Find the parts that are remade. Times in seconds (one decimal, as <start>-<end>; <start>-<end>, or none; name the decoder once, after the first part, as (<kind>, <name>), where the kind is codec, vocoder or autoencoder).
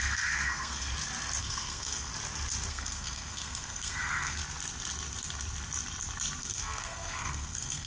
0.0-0.9 (codec, SNAC); 1.4-2.1; 2.7-4.4; 6.4-7.9